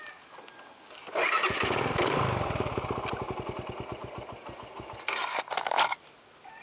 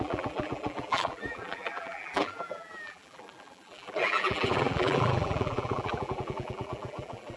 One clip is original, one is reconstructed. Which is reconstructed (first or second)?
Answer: second